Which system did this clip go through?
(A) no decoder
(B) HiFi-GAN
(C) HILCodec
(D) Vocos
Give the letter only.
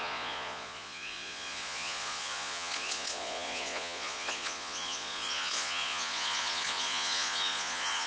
D